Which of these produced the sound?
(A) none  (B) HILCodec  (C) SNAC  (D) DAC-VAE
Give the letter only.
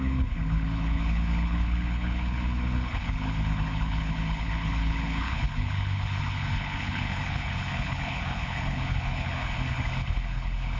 B